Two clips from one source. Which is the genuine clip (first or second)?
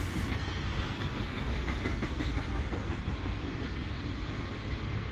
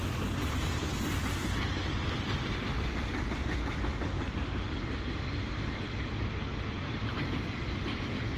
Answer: second